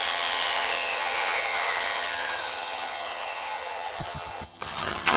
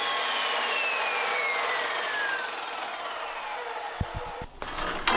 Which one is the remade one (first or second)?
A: first